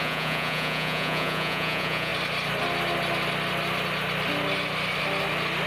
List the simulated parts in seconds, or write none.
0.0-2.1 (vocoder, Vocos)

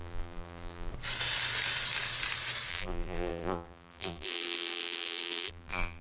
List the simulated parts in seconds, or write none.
0.0-0.9 (vocoder, BigVGAN v2); 2.7-6.0